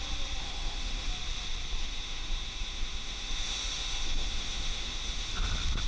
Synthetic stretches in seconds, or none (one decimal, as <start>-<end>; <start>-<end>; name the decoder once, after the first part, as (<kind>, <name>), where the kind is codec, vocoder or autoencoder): 0.4-1.1 (autoencoder, DAC-VAE); 1.8-5.3